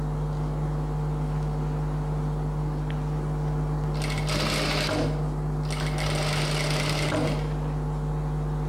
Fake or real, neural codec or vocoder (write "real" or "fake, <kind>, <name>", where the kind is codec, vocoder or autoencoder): real